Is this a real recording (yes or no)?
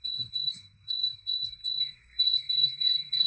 no